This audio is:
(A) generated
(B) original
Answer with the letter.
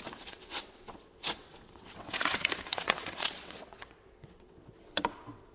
A